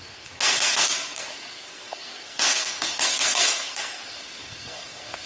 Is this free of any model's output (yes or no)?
no